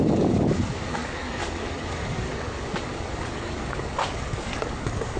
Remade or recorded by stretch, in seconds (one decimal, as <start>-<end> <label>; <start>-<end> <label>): 0.0-5.2 remade